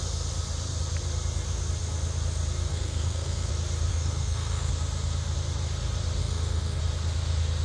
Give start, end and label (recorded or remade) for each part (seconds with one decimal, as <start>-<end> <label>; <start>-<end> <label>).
0.0-2.7 recorded; 2.7-3.5 remade; 3.5-3.9 recorded; 3.9-4.7 remade; 4.7-6.2 recorded; 6.2-6.8 remade; 6.8-7.6 recorded